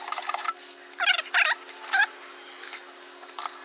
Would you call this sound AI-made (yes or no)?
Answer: no